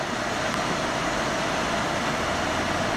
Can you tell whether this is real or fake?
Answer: real